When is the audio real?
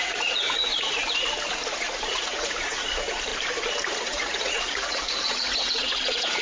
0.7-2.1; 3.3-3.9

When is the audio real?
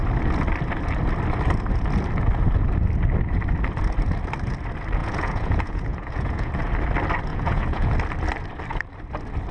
0.0-5.0; 6.5-7.3; 7.9-9.5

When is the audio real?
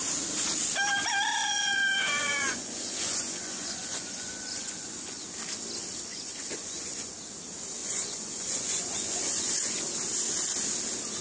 0.0-1.4; 5.2-6.1; 7.1-7.8; 9.7-11.2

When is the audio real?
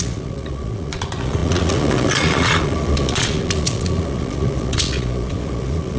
none